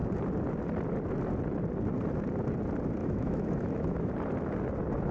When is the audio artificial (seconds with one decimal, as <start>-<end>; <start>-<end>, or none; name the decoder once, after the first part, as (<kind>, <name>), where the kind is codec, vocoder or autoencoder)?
3.0-4.1 (autoencoder, DAC-VAE)